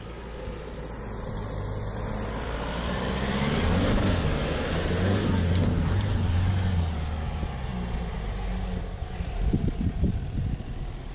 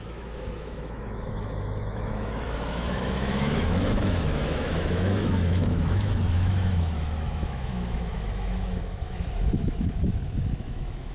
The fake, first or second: second